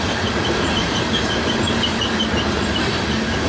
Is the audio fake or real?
real